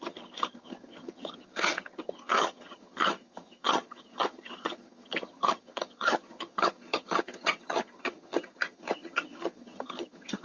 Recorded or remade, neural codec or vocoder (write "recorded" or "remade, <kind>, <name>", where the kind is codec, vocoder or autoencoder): remade, vocoder, HiFi-GAN